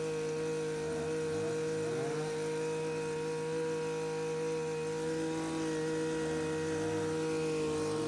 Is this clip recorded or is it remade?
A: recorded